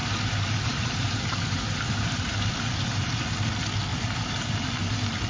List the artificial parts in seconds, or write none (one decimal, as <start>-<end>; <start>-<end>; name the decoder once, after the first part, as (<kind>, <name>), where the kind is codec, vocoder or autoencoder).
0.0-3.2 (vocoder, BigVGAN v2); 3.9-4.7